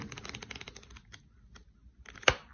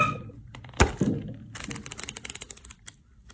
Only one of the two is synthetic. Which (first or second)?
second